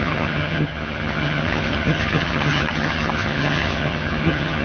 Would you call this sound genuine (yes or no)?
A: no